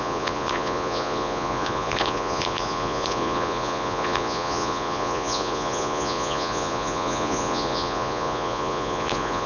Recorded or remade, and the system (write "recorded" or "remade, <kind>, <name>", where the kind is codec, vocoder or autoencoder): remade, vocoder, Vocos